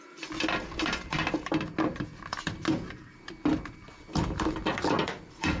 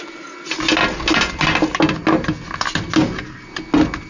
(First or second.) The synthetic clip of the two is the first